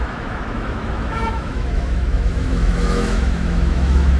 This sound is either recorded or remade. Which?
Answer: remade